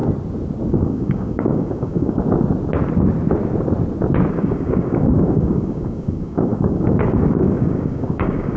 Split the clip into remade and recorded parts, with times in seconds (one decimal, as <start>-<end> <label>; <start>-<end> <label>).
0.0-0.7 recorded; 0.7-2.2 remade; 2.2-4.3 recorded; 4.3-8.6 remade